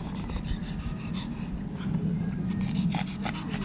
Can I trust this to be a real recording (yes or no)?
yes